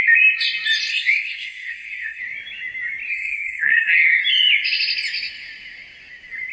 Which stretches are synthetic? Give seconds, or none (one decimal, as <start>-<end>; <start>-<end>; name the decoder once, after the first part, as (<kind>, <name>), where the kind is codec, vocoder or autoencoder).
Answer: 0.9-2.2 (codec, SNAC); 3.1-4.2

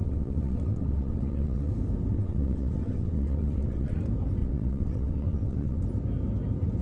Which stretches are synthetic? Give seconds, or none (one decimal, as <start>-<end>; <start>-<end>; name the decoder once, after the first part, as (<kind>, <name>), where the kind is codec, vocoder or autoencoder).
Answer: 0.0-1.7 (vocoder, WaveNeXt); 2.1-4.0; 4.4-5.8

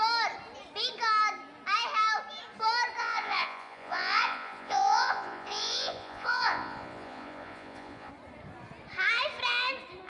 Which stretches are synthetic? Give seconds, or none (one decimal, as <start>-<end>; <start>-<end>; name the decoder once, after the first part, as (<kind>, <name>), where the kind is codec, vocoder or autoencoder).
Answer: 3.0-8.1 (vocoder, Vocos)

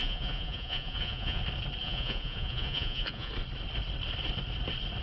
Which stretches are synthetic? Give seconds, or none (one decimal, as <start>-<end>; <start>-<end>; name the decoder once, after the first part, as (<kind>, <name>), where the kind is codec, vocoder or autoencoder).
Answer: 0.0-1.4 (vocoder, Vocos); 1.8-3.3

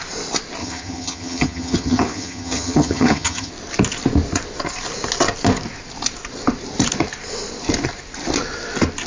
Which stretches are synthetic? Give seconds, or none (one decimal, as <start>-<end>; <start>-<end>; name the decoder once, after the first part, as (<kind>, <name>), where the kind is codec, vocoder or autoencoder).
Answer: 0.6-3.5 (vocoder, HiFi-GAN)

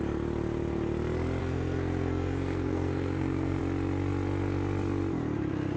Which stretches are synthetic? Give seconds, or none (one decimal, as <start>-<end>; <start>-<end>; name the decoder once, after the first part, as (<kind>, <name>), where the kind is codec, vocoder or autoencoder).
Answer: 1.4-3.6 (codec, SNAC)

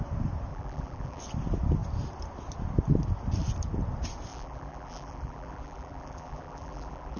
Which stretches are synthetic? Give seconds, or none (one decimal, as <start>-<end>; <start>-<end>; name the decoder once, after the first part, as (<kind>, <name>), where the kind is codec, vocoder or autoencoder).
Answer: 0.5-1.2 (vocoder, BigVGAN v2); 4.3-7.2